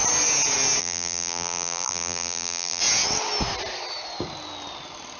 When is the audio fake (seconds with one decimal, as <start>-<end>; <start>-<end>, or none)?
0.8-2.8